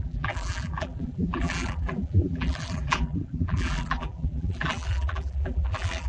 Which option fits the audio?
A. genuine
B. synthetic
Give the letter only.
B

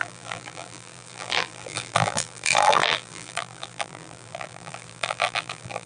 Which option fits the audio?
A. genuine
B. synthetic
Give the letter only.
B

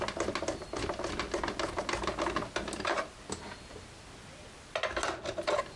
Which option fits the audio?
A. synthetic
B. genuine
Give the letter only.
B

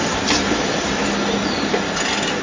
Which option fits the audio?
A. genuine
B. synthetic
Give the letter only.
A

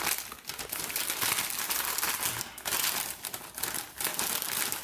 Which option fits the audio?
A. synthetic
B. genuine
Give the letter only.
B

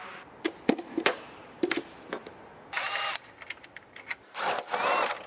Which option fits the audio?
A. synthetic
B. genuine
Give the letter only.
B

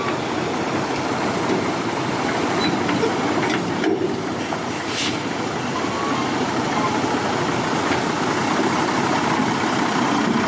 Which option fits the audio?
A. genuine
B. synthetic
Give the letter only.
B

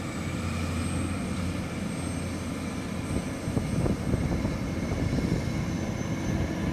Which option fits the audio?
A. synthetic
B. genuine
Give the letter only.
B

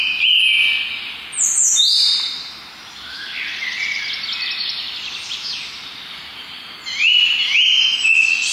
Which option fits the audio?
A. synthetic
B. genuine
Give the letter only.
B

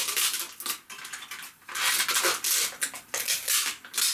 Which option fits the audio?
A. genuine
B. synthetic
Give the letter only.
A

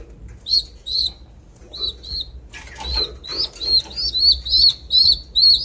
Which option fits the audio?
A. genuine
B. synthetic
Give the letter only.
A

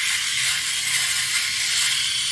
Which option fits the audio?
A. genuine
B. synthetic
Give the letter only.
A